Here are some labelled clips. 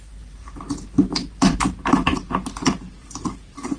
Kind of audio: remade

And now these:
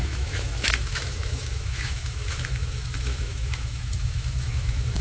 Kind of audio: remade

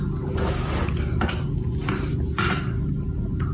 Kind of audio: recorded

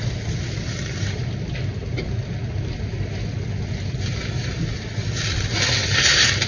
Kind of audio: recorded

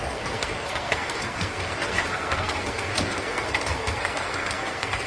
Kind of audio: remade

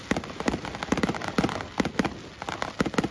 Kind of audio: recorded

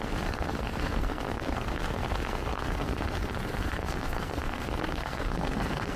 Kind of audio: remade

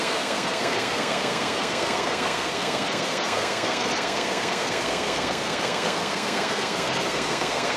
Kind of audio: remade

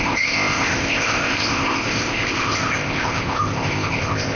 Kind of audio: remade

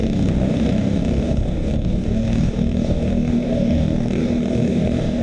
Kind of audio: remade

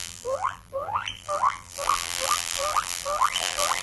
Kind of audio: remade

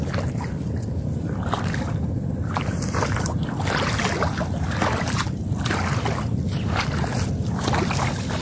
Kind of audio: recorded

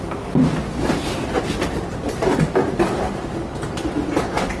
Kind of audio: recorded